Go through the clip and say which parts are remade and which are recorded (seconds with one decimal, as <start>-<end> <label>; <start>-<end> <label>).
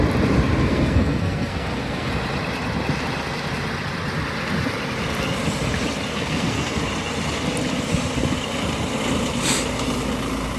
0.0-0.6 recorded; 0.6-2.1 remade; 2.1-6.1 recorded; 6.1-6.8 remade; 6.8-10.6 recorded